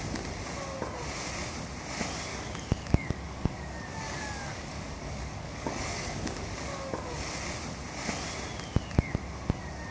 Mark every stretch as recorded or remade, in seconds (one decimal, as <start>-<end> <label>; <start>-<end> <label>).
0.0-2.3 recorded; 2.3-7.3 remade; 7.3-9.9 recorded